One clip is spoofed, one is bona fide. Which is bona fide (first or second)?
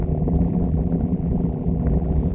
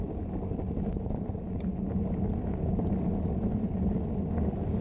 second